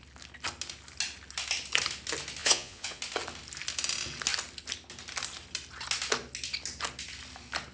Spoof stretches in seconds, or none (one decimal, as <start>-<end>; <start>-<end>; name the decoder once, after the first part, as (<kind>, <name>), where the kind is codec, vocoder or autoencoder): 2.4-3.0 (vocoder, Vocos)